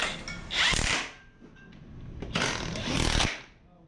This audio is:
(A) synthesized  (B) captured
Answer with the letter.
B